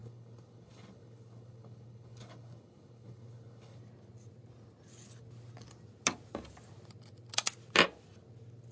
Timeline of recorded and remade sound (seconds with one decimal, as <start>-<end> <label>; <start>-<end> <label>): 0.0-3.8 remade; 3.8-8.7 recorded